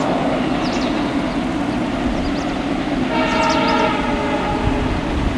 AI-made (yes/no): no